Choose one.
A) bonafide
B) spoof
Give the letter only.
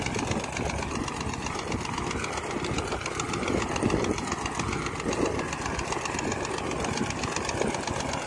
A